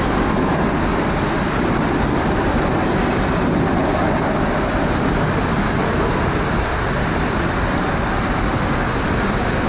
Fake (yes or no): no